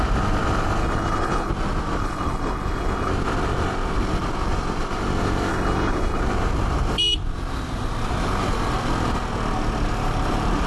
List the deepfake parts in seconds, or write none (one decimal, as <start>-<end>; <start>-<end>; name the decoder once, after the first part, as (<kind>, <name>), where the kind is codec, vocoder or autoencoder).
0.8-1.5 (codec, HILCodec); 2.0-3.1; 5.5-6.2